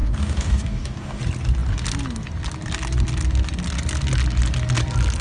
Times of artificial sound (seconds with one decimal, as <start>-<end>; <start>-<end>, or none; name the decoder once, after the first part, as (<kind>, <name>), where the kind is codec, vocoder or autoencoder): 0.0-1.2 (codec, DAC)